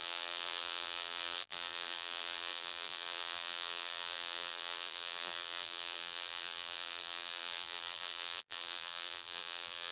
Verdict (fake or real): fake